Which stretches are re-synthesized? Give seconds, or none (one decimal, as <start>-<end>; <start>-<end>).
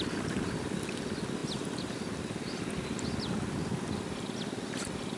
none